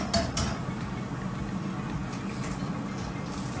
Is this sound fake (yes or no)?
no